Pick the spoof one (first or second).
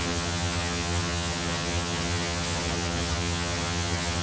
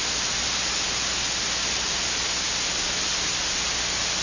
first